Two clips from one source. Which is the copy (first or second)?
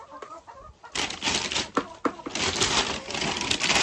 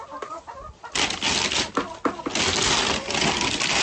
first